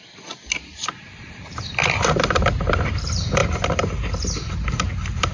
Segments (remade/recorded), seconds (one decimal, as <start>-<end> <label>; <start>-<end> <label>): 0.0-5.3 recorded